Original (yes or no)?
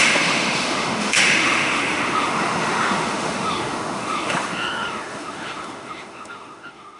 no